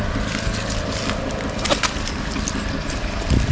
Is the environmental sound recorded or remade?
recorded